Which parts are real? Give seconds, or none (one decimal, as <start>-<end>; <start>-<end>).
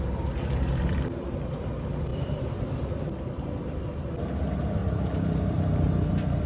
4.8-6.1